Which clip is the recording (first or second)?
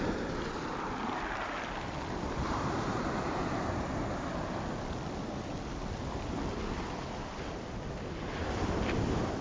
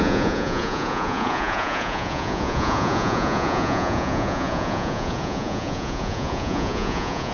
first